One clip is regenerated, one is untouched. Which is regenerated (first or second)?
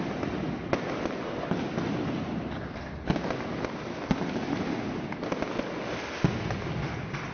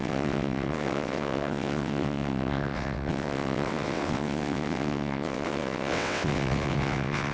second